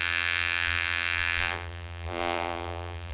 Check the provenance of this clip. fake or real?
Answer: fake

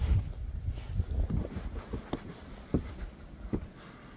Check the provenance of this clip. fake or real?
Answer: fake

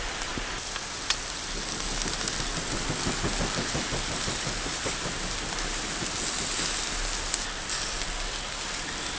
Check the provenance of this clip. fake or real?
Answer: real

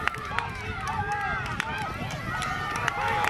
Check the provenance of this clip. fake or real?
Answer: real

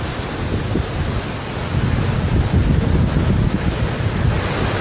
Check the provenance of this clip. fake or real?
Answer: real